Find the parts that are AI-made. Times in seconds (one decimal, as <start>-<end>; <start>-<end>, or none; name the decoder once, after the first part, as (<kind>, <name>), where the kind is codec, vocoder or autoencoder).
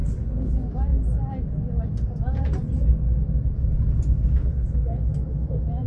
0.0-0.5 (codec, HILCodec); 4.4-5.1